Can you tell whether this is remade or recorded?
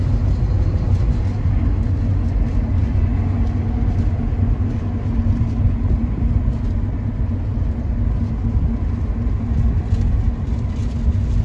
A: recorded